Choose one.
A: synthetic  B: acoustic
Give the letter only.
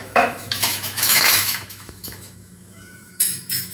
A